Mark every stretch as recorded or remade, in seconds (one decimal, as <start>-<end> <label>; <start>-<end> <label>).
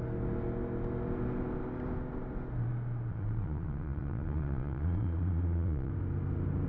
0.0-3.1 recorded; 3.1-5.9 remade; 5.9-6.7 recorded